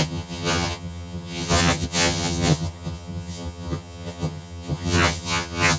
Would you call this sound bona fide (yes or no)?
no